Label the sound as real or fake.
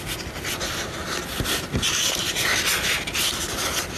real